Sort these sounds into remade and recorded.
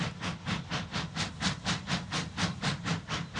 recorded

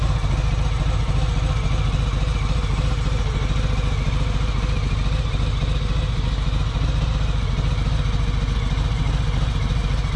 recorded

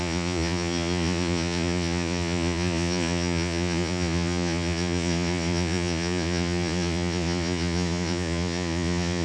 remade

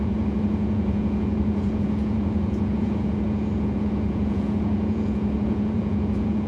remade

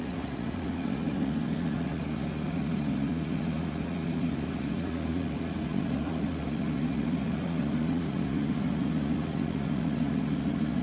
remade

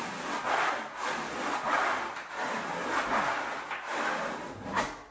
recorded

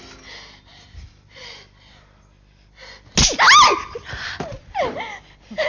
recorded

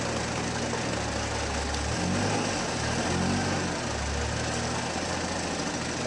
recorded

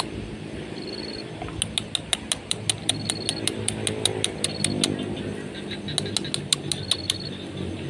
recorded